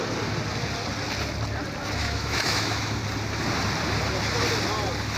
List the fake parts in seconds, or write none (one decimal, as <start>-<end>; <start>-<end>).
2.0-3.0